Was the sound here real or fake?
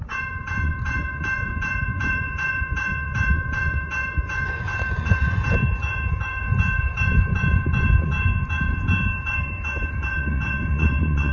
fake